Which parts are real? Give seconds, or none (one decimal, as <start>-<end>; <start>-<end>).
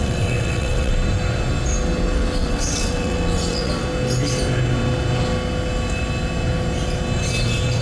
0.9-2.4; 3.7-7.8